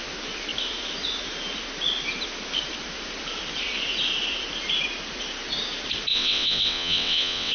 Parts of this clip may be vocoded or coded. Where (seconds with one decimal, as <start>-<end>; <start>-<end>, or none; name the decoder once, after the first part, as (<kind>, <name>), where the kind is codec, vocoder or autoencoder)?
6.1-7.5 (vocoder, WaveNeXt)